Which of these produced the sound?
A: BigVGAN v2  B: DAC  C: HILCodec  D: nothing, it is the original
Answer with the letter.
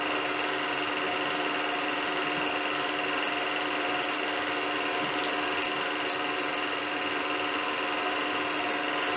D